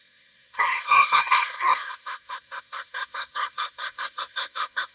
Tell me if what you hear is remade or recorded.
remade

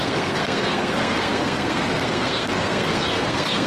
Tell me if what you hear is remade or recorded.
remade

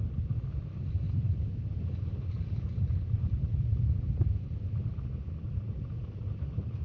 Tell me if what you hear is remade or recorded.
recorded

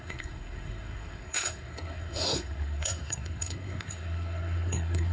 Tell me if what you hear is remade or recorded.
remade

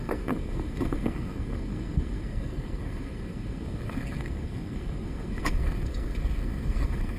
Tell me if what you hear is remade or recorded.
remade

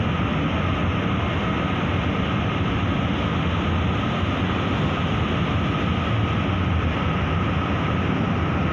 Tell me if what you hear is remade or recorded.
recorded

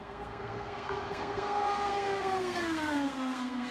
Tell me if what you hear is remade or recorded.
remade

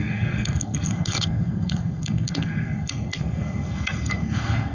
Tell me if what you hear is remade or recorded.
remade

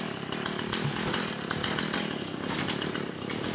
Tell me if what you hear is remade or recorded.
recorded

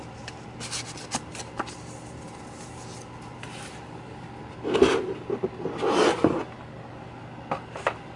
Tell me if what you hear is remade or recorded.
recorded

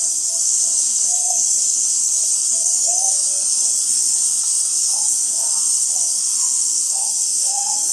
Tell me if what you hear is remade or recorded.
remade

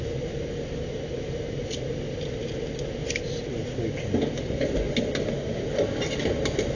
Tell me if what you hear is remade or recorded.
recorded